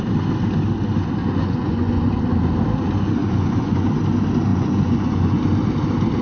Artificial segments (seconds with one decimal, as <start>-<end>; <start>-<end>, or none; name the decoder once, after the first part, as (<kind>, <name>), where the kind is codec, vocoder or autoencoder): 1.2-2.1 (vocoder, Vocos); 3.2-3.9; 4.5-5.4